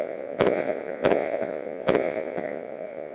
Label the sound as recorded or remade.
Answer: remade